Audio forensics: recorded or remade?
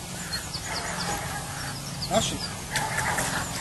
recorded